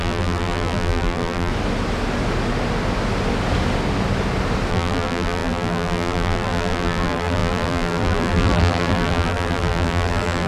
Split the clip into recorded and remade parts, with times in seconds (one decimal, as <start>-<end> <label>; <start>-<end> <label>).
0.0-1.5 remade; 1.5-4.7 recorded; 4.7-10.5 remade